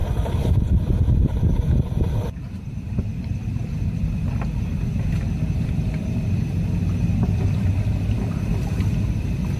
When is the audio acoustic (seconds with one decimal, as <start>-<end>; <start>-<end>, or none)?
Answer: 4.1-6.9; 8.7-9.6

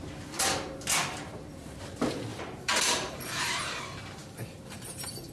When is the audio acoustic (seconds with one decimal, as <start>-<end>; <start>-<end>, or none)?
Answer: 0.0-1.0; 1.8-2.3; 3.8-4.2

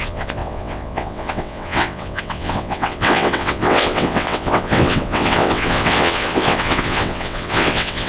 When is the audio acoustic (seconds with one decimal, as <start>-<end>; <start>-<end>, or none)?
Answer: none